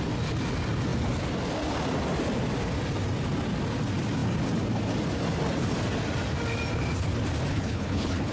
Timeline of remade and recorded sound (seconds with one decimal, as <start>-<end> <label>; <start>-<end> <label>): 0.0-7.5 recorded; 7.5-8.3 remade